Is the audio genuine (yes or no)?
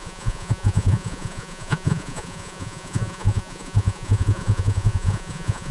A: no